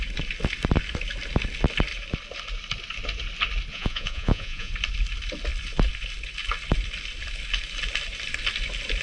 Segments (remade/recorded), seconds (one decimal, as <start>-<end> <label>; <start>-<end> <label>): 0.0-3.7 recorded; 3.7-4.7 remade; 4.7-9.0 recorded